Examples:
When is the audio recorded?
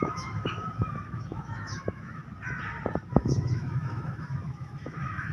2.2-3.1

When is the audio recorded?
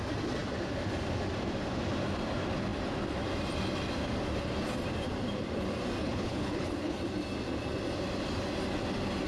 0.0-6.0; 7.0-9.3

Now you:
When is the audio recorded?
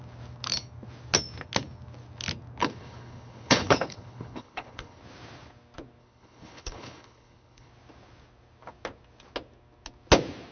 0.0-2.6; 5.0-6.0; 7.7-10.5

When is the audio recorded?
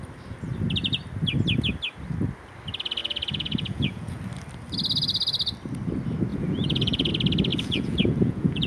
0.0-3.0; 4.2-6.3; 7.1-7.5